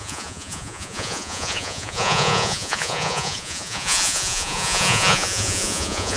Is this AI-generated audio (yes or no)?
yes